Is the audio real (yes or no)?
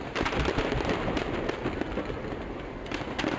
yes